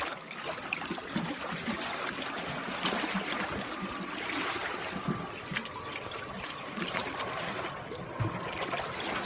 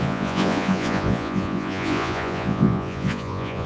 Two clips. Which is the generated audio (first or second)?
second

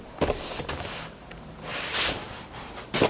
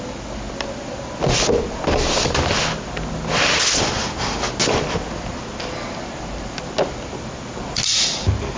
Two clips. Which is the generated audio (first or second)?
first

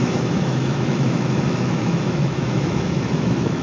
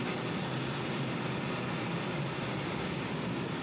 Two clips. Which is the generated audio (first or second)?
first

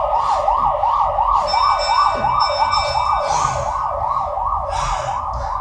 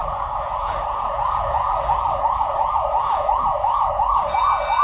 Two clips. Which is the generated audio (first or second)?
second